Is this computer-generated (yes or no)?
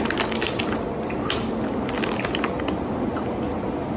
no